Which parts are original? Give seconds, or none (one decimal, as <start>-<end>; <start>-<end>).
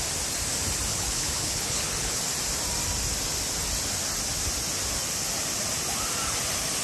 0.0-0.9; 2.2-6.8